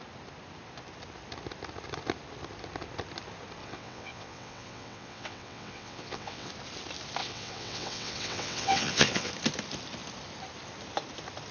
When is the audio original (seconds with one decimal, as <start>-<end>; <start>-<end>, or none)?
0.0-3.6; 6.5-7.2; 9.3-11.5